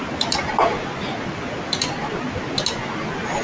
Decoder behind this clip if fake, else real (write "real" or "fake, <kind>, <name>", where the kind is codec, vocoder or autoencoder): real